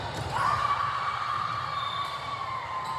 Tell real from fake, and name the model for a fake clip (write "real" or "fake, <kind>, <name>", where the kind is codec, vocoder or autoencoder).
fake, vocoder, BigVGAN v2